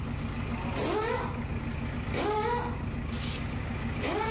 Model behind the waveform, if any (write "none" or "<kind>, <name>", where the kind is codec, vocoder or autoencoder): none